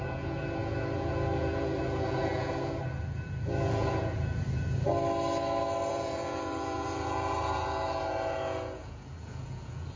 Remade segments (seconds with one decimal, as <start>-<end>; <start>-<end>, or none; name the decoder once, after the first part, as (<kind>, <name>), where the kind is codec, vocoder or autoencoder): 0.0-4.9 (vocoder, Vocos); 5.9-10.0